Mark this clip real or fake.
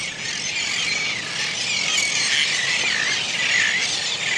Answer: real